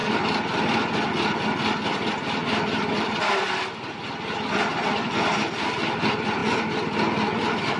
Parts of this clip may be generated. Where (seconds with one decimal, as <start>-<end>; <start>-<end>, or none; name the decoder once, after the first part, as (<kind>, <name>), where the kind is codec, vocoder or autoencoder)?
0.0-6.4 (vocoder, BigVGAN v2)